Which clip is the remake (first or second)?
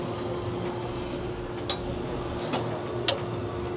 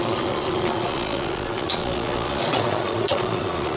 second